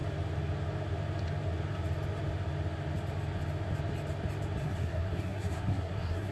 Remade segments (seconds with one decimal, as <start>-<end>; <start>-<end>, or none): 4.6-6.3